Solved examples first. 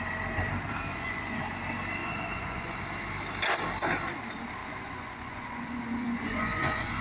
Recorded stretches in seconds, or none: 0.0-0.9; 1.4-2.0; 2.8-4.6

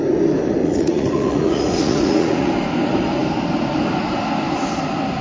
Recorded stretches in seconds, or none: 0.0-0.6; 2.5-5.2

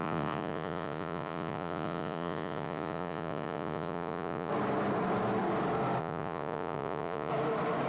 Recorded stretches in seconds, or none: 4.5-6.0; 7.3-7.9

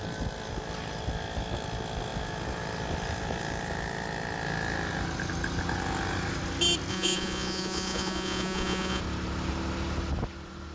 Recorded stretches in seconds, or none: 0.0-6.9; 9.0-10.7

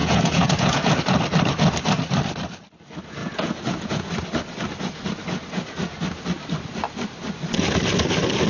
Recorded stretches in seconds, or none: 1.0-3.2; 4.1-8.5

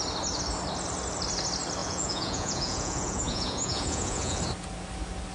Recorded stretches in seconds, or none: 0.0-1.8; 4.4-5.3